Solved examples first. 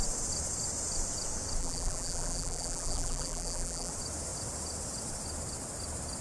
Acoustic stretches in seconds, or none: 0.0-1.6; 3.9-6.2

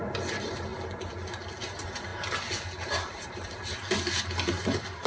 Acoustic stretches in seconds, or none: 0.7-1.5; 2.1-2.8

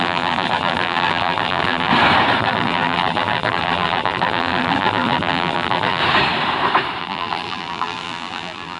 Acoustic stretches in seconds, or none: 1.9-2.4; 6.0-7.0

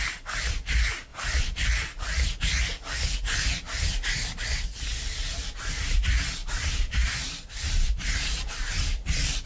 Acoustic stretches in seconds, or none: 0.0-1.1; 1.7-6.4; 8.7-9.5